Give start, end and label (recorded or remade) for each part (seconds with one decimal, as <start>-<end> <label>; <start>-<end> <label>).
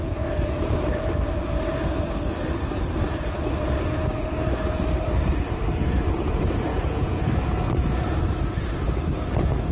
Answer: 0.0-6.7 recorded; 6.7-7.2 remade; 7.2-9.7 recorded